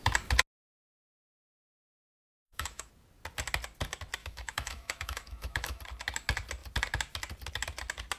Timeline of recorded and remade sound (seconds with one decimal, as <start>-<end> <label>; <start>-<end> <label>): 0.0-2.0 recorded; 2.0-2.9 remade; 2.9-4.2 recorded; 4.2-5.8 remade; 5.8-8.2 recorded